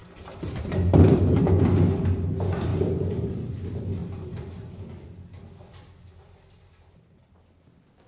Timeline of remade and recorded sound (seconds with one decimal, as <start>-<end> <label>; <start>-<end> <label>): 0.0-1.4 remade; 1.4-2.7 recorded; 2.7-3.3 remade; 3.3-4.0 recorded; 4.0-4.8 remade; 4.8-8.1 recorded